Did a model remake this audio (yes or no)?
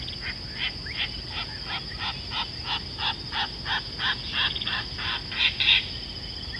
no